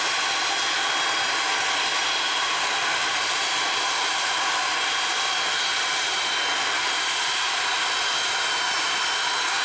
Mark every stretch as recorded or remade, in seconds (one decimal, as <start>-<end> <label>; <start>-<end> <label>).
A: 0.0-2.0 recorded; 2.0-2.6 remade; 2.6-9.6 recorded